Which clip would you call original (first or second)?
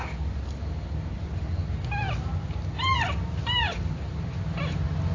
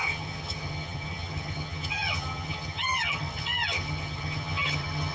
first